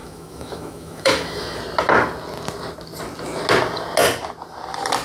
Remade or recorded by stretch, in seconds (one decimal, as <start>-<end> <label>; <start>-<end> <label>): 0.0-1.6 remade; 1.6-5.0 recorded